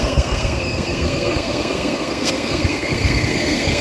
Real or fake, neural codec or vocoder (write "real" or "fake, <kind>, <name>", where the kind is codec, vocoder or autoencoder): fake, codec, SNAC